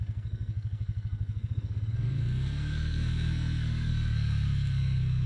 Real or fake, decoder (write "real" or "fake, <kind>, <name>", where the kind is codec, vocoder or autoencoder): fake, codec, SNAC